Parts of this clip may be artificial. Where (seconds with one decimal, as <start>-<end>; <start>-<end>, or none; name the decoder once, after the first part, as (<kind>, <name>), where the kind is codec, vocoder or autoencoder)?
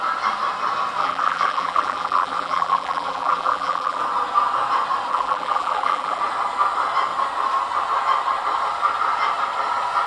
1.0-4.0 (vocoder, BigVGAN v2); 5.1-6.2